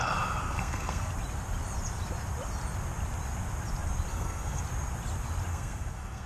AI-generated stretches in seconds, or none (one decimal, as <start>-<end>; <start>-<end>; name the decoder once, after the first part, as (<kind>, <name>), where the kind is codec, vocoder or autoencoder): 0.4-1.1 (codec, SNAC); 4.1-4.6; 5.5-6.3